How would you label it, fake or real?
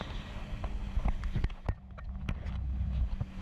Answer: real